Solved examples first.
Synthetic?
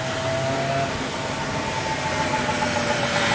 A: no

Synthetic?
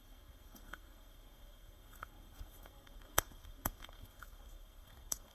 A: yes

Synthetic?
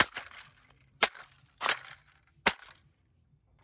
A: no